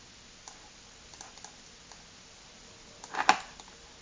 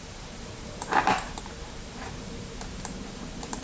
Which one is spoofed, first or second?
second